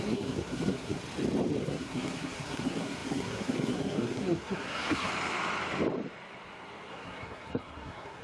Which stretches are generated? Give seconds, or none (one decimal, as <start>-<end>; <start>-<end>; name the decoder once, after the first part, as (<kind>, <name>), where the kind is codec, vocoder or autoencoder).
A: 0.0-1.0 (codec, SNAC); 1.6-5.1; 6.9-8.2